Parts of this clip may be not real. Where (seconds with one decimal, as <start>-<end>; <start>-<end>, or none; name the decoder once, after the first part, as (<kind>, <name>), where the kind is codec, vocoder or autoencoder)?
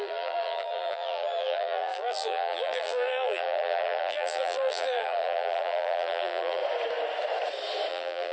0.0-6.6 (vocoder, BigVGAN v2); 7.9-8.3